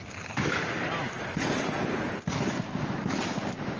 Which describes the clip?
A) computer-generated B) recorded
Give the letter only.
B